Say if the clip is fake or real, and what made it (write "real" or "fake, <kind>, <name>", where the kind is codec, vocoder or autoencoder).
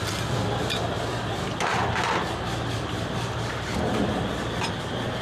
real